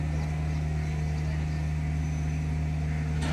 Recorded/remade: recorded